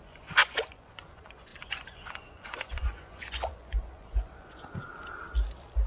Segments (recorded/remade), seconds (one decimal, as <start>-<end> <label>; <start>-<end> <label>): 0.0-4.9 remade; 4.9-5.9 recorded